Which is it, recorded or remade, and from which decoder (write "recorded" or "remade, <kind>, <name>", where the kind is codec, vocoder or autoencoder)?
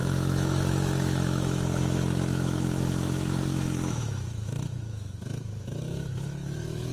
remade, autoencoder, DAC-VAE